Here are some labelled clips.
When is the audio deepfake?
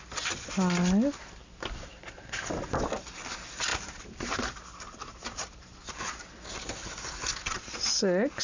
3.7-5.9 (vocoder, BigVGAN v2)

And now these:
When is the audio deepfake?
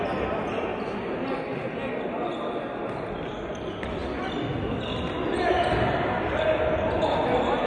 none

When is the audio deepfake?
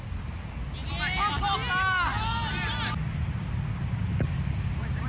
none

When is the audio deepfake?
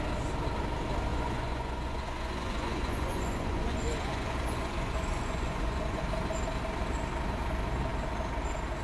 1.1-6.0 (vocoder, Vocos)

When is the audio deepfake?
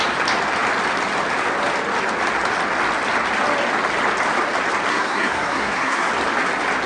4.9-6.1 (codec, SNAC)